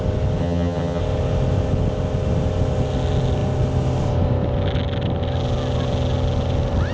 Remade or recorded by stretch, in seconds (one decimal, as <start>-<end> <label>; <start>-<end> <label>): 0.0-0.4 recorded; 0.4-1.0 remade; 1.0-6.9 recorded